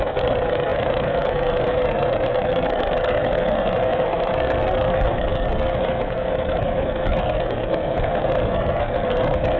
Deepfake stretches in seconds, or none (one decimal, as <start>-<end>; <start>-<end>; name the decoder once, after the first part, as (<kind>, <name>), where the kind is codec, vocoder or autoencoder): 0.0-9.6 (codec, SNAC)